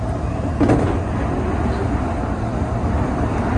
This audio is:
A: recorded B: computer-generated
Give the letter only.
A